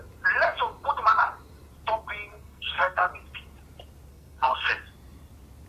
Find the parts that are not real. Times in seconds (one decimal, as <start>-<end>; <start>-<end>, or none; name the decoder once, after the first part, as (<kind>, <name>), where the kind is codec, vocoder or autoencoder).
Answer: 2.3-3.1 (codec, SNAC); 4.1-4.7